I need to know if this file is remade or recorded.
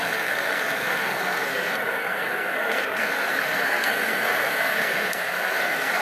remade